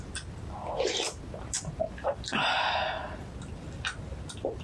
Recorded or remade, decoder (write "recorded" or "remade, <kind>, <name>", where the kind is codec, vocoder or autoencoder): recorded